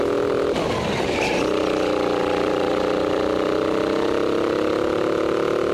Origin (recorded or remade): recorded